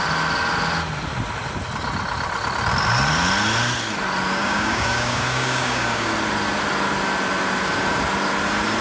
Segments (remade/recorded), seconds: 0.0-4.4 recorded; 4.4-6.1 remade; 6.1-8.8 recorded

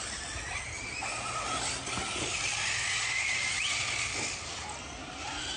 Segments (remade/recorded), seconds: 0.0-3.0 recorded; 3.0-3.8 remade; 3.8-5.6 recorded

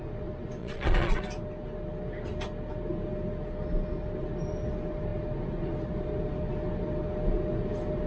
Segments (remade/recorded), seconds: 0.0-0.6 recorded; 0.6-1.2 remade; 1.2-8.1 recorded

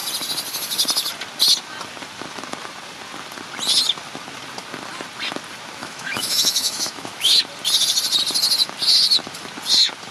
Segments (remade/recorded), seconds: 0.0-5.8 recorded; 5.8-7.4 remade; 7.4-10.1 recorded

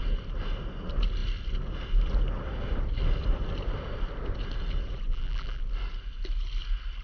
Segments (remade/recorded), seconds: 0.0-5.1 recorded; 5.1-5.6 remade; 5.6-7.0 recorded